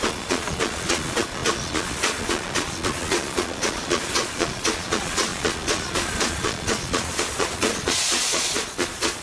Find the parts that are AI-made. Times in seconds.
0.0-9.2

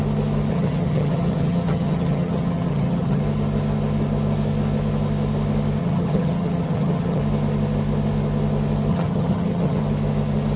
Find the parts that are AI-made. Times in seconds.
0.5-3.2; 5.8-7.2; 8.9-9.8